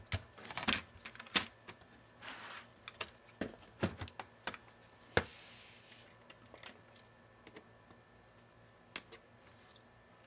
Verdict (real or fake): real